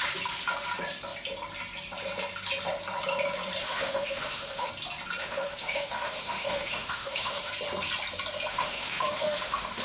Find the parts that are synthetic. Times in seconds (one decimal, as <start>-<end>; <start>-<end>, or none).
3.6-4.7; 5.2-7.5; 8.5-9.8